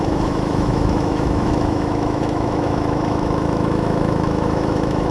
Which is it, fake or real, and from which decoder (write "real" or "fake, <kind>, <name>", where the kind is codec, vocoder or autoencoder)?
fake, autoencoder, DAC-VAE